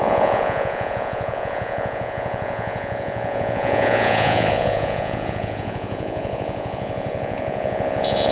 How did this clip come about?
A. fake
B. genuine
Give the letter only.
A